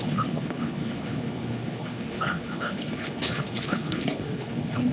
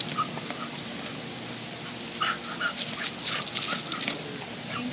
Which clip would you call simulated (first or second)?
first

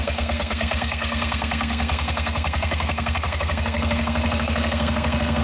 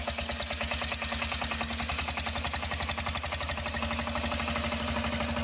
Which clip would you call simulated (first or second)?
first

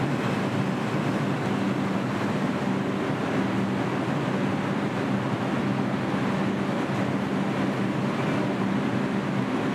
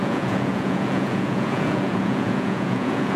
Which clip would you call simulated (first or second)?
second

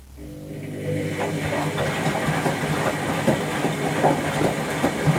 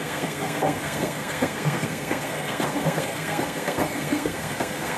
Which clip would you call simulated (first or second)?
second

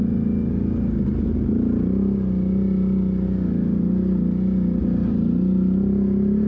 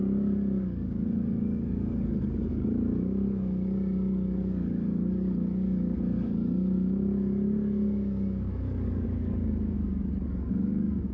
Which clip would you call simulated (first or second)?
second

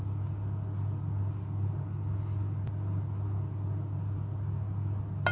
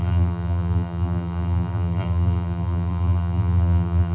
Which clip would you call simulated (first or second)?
second